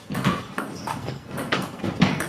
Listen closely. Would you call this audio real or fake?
fake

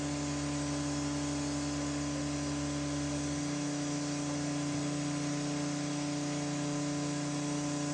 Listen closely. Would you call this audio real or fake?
real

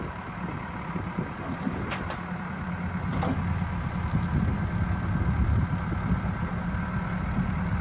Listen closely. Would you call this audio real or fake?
real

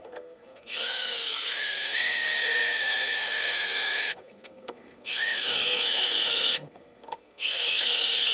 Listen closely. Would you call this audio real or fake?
fake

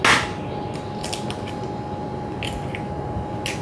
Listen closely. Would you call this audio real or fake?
real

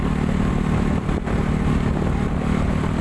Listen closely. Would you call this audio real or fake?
real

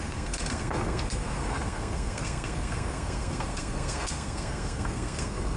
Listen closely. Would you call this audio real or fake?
fake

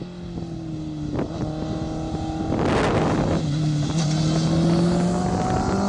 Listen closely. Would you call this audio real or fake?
real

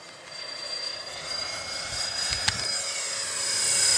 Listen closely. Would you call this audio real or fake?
real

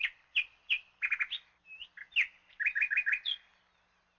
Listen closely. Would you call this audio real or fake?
real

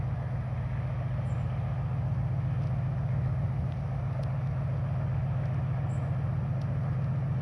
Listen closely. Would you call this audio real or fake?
real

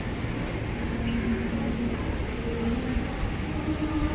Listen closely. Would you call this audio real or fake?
real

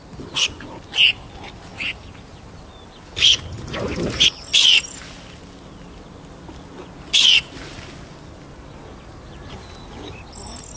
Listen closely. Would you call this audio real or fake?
real